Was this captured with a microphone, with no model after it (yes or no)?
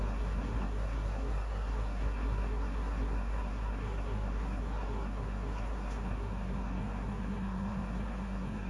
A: no